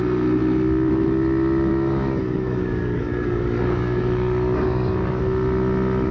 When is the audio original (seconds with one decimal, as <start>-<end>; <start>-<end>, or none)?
0.0-1.7; 5.2-6.1